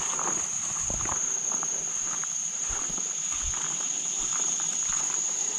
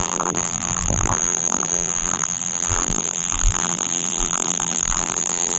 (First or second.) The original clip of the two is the first